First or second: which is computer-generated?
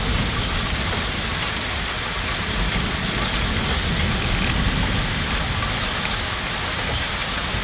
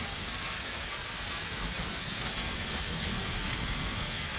second